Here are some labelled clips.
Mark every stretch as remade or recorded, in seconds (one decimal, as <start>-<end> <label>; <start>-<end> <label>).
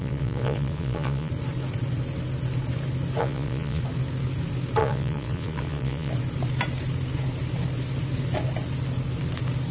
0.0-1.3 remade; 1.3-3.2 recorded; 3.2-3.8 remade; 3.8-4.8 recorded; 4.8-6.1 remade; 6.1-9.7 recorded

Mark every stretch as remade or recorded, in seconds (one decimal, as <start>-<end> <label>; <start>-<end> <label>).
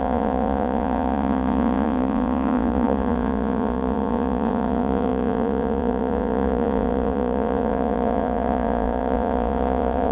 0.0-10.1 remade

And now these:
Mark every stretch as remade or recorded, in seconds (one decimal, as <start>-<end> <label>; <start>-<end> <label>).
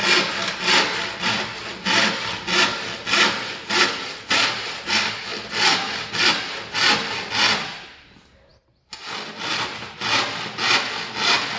0.0-11.6 recorded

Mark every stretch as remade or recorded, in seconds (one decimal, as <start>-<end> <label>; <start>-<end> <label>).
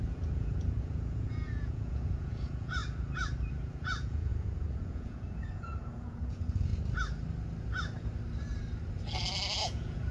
0.0-2.8 remade; 2.8-3.5 recorded; 3.5-6.7 remade; 6.7-9.6 recorded; 9.6-10.1 remade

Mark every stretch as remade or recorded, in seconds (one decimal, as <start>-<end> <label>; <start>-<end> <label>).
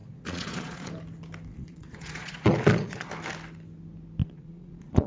0.0-0.9 remade; 0.9-1.5 recorded; 1.5-3.1 remade; 3.1-4.2 recorded; 4.2-5.1 remade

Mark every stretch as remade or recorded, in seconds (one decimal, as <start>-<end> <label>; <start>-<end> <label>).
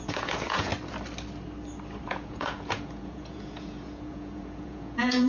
0.0-0.7 remade; 0.7-2.0 recorded; 2.0-5.3 remade